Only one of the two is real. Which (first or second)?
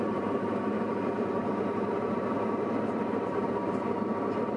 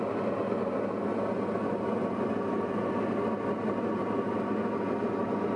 second